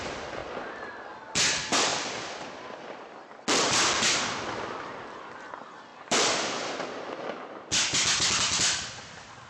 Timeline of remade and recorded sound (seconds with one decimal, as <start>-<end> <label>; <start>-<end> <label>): 0.0-1.9 recorded; 1.9-3.4 remade; 3.4-9.5 recorded